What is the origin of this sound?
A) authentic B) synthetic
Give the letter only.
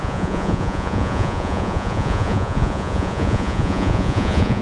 B